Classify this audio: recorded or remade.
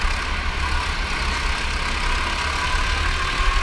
recorded